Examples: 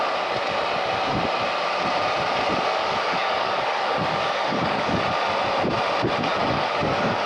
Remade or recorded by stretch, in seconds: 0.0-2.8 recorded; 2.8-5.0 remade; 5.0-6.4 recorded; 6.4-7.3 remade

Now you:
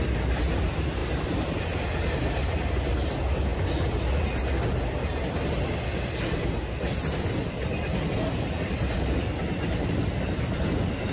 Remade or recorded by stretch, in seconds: 0.0-11.1 recorded

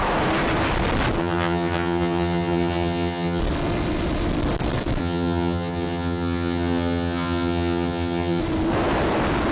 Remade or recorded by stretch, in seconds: 0.0-1.2 recorded; 1.2-3.4 remade; 3.4-5.0 recorded; 5.0-8.4 remade; 8.4-9.5 recorded

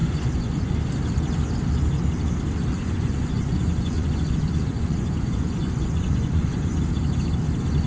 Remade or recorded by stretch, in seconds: 0.0-0.8 remade; 0.8-2.7 recorded; 2.7-6.8 remade; 6.8-7.9 recorded

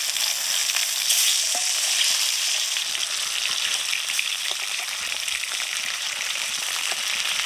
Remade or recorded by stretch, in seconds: 0.0-0.6 recorded; 0.6-2.9 remade; 2.9-4.3 recorded; 4.3-6.6 remade; 6.6-7.5 recorded